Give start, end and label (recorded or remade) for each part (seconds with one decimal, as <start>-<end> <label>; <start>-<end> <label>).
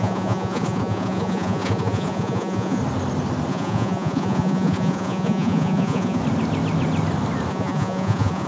0.0-2.8 remade; 2.8-3.5 recorded; 3.5-6.2 remade; 6.2-7.5 recorded; 7.5-8.5 remade